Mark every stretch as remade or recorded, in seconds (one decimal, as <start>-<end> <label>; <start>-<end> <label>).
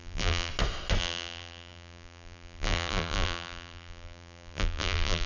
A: 0.0-0.5 remade; 0.5-1.0 recorded; 1.0-5.3 remade